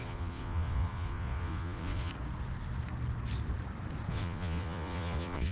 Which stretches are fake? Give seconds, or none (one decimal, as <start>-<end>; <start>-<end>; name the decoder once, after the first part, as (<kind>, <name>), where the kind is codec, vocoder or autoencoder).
0.0-2.1 (vocoder, Vocos); 4.1-5.5